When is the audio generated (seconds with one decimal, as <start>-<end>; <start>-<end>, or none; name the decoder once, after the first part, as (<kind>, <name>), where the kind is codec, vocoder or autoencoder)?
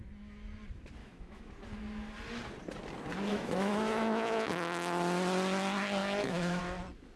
1.0-1.5 (autoencoder, DAC-VAE); 3.3-4.5; 6.0-6.6